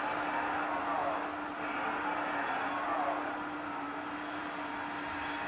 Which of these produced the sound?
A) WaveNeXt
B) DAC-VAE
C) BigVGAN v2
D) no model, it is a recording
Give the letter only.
D